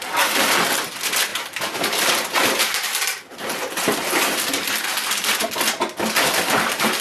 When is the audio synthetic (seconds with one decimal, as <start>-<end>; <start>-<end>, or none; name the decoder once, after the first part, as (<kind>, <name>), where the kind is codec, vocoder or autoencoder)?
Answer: 1.3-5.5 (vocoder, BigVGAN v2)